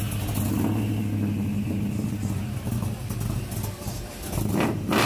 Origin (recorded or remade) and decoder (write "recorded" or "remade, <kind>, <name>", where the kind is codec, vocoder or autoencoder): recorded